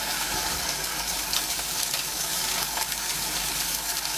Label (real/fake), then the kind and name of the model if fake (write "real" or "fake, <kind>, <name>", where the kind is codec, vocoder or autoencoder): fake, codec, DAC